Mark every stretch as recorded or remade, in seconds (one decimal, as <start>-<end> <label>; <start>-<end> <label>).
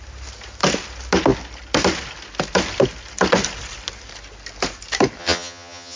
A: 0.0-5.2 recorded; 5.2-6.0 remade